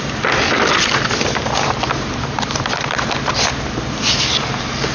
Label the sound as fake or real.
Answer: real